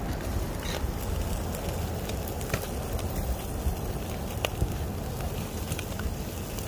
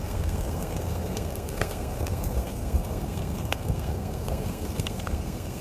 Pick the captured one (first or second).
first